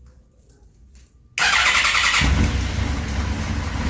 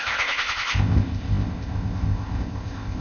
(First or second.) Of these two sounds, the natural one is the first